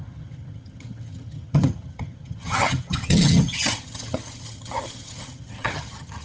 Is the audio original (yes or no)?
no